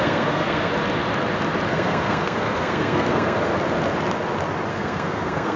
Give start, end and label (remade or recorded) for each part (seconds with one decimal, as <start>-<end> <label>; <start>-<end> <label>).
0.0-0.7 remade; 0.7-1.7 recorded; 1.7-3.5 remade; 3.5-4.7 recorded; 4.7-5.6 remade

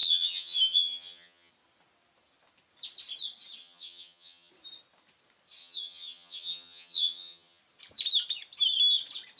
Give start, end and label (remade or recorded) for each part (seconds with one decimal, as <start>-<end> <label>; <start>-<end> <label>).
0.0-1.5 remade; 1.5-3.6 recorded; 3.6-4.5 remade; 4.5-5.6 recorded; 5.6-7.6 remade; 7.6-9.4 recorded

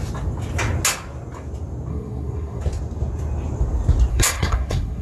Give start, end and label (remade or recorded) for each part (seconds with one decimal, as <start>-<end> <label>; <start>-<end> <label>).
0.0-1.9 recorded; 1.9-2.6 remade; 2.6-4.1 recorded; 4.1-5.0 remade

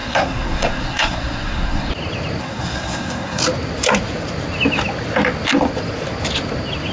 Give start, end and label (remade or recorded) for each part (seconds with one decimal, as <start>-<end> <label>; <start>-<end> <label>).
0.0-1.9 remade; 1.9-2.4 recorded; 2.4-3.4 remade; 3.4-6.9 recorded

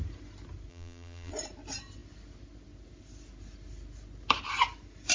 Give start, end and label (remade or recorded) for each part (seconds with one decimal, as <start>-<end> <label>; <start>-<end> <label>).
0.0-0.7 recorded; 0.7-1.3 remade; 1.3-5.1 recorded

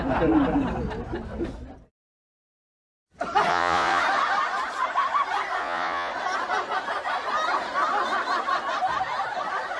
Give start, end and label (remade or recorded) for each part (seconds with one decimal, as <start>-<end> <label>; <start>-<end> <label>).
0.0-3.5 recorded; 3.5-4.0 remade; 4.0-5.6 recorded; 5.6-6.1 remade; 6.1-9.8 recorded

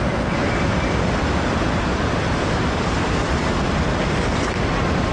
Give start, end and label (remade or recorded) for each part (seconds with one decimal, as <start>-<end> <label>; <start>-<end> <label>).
0.0-0.4 recorded; 0.4-3.5 remade; 3.5-5.1 recorded

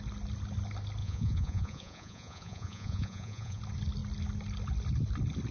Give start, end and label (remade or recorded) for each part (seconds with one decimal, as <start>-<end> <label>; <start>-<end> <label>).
0.0-1.0 recorded; 1.0-3.6 remade; 3.6-5.5 recorded